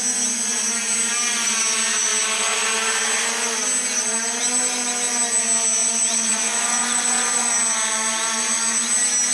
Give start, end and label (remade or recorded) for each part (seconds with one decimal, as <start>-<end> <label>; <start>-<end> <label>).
0.0-5.8 recorded; 5.8-7.5 remade; 7.5-9.3 recorded